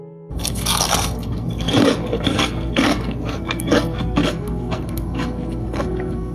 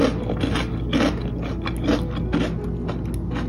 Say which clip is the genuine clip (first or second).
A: second